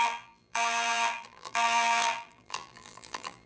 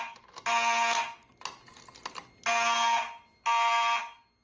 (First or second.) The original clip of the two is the second